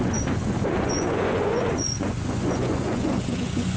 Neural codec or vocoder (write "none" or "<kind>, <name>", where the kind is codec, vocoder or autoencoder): vocoder, Vocos